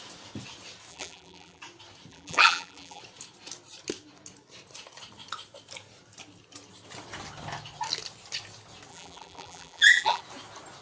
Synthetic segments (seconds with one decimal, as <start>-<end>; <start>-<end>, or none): 0.9-1.6; 2.1-3.0; 8.9-10.2